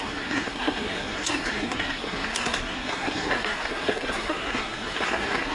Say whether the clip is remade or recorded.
remade